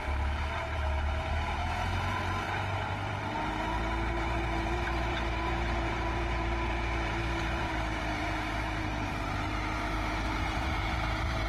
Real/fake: fake